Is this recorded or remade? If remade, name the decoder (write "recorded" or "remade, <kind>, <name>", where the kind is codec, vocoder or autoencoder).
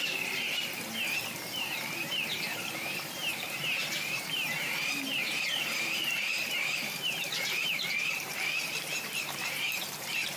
remade, vocoder, BigVGAN v2